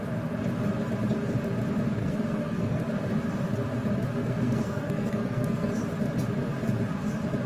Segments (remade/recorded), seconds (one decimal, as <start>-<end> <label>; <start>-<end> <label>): 0.0-2.0 recorded; 2.0-2.8 remade; 2.8-4.2 recorded; 4.2-5.7 remade; 5.7-7.5 recorded